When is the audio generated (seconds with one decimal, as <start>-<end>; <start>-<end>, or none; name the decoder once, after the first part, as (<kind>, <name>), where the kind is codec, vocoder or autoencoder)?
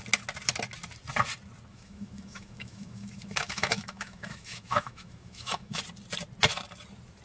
1.7-5.8 (autoencoder, DAC-VAE)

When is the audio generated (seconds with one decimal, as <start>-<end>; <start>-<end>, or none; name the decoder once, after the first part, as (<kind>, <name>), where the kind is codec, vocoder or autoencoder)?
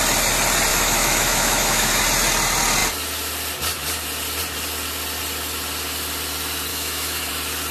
0.7-2.0 (autoencoder, DAC-VAE); 6.7-7.3